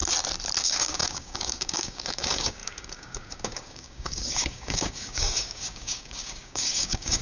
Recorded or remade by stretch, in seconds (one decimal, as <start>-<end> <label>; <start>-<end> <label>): 0.0-0.6 recorded; 0.6-7.2 remade